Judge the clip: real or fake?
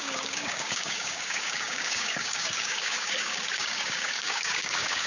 fake